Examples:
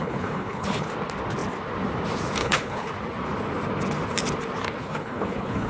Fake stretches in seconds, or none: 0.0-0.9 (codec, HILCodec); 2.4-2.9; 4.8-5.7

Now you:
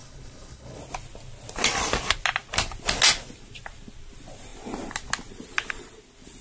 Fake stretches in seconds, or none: 0.0-0.8 (codec, HILCodec)

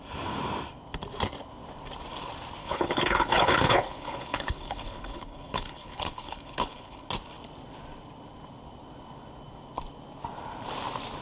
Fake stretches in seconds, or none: 2.6-7.1 (codec, HILCodec)

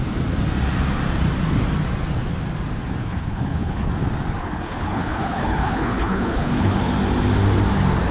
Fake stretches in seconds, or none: 3.0-3.9 (codec, HILCodec); 4.4-6.9

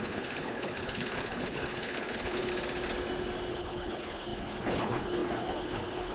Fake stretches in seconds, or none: 0.0-2.5 (codec, HILCodec); 3.5-6.1

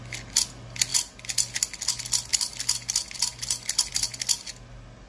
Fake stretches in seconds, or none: none

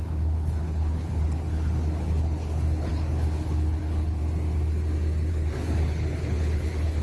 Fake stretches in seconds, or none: 0.0-4.2 (codec, HILCodec); 5.3-7.0